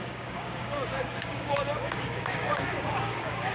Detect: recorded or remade remade